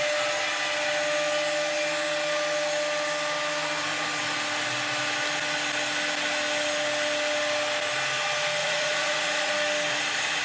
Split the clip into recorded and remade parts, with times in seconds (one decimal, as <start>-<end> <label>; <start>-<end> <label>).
0.0-8.6 recorded; 8.6-9.5 remade; 9.5-10.4 recorded